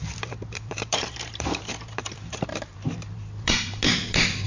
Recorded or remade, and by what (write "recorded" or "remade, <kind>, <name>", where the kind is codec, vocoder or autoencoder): remade, vocoder, BigVGAN v2